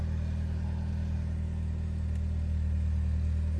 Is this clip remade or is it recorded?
recorded